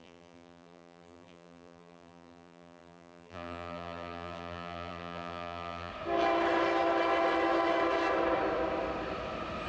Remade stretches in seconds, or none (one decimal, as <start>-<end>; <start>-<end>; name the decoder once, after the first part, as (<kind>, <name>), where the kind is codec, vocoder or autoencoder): 0.0-5.9 (vocoder, BigVGAN v2)